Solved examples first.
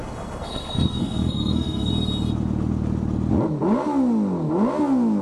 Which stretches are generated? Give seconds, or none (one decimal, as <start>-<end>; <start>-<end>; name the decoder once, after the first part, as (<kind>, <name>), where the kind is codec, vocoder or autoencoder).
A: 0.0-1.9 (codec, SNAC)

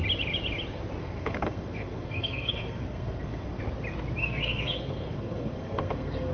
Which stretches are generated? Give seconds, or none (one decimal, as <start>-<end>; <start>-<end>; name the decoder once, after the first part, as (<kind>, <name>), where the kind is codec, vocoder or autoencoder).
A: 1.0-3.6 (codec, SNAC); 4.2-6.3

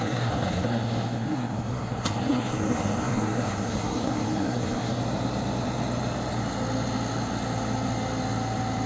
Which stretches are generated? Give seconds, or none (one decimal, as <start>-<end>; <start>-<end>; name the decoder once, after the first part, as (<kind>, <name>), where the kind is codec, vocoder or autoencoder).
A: 0.0-5.0 (codec, SNAC)